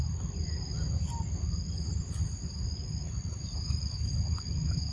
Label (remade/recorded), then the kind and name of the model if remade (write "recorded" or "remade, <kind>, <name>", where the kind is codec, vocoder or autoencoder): recorded